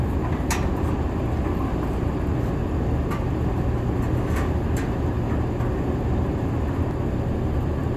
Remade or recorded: recorded